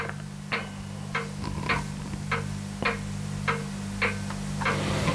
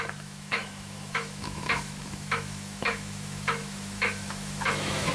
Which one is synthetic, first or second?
second